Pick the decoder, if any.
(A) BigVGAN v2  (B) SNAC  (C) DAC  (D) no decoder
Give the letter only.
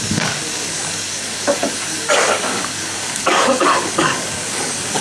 C